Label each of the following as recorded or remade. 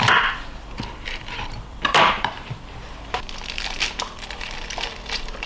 remade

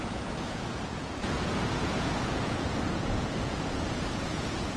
remade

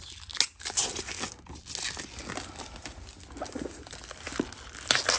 recorded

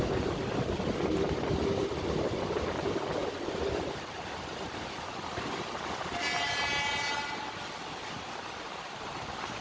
recorded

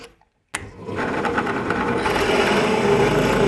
recorded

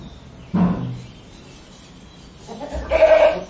recorded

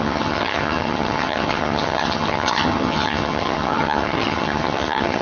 remade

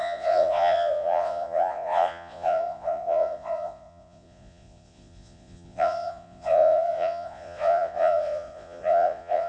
remade